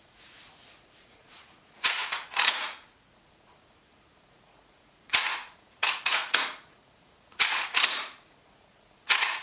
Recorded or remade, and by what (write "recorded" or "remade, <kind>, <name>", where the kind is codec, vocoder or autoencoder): remade, vocoder, Vocos